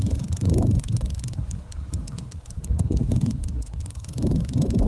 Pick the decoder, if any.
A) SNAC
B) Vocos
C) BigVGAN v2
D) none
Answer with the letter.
A